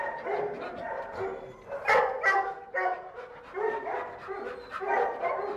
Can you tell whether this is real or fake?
real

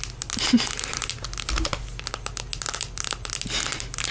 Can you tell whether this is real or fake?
real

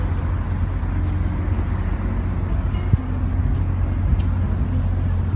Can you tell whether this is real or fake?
real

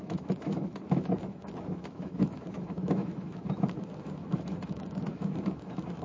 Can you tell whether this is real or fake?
fake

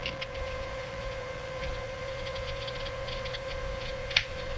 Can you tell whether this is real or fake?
fake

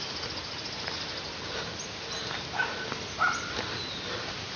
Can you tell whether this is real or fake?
real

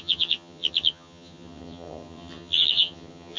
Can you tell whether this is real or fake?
fake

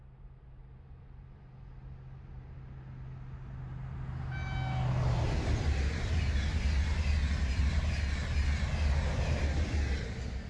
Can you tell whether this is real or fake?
real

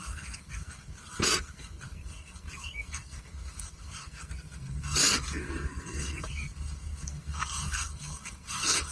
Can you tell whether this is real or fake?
fake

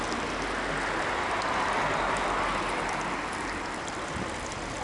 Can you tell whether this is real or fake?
real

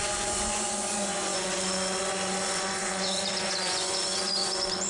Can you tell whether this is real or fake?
fake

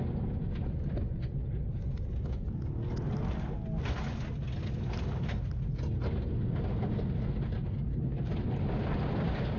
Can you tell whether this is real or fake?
real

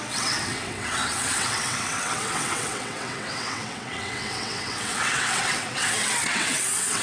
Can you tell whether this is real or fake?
fake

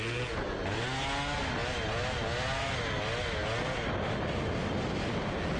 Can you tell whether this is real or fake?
real